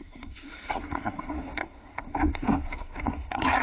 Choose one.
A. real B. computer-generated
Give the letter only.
B